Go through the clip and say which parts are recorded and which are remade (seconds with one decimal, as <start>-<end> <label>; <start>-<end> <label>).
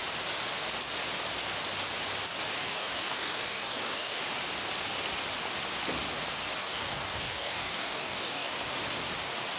0.0-2.6 recorded; 2.6-4.2 remade; 4.2-6.6 recorded; 6.6-8.5 remade; 8.5-9.6 recorded